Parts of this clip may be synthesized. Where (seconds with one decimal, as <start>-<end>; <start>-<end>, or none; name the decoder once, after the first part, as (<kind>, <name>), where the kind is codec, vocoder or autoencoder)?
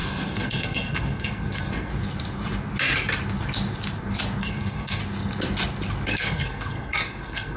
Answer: 0.0-1.9 (codec, SNAC); 4.4-5.0; 6.1-7.6